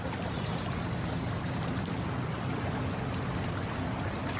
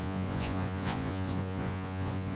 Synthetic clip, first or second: second